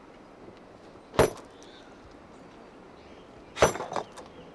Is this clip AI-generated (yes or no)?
no